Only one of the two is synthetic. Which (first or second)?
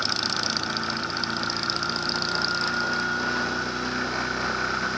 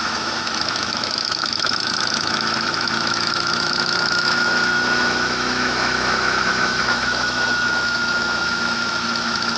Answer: second